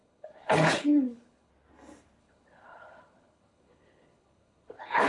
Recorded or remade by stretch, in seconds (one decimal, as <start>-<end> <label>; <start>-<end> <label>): 0.0-1.5 remade; 1.5-2.2 recorded; 2.2-5.1 remade